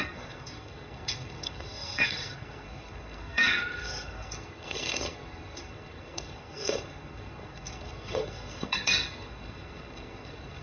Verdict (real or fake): fake